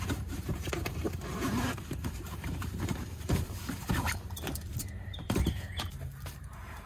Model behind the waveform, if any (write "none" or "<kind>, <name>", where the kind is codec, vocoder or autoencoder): vocoder, BigVGAN v2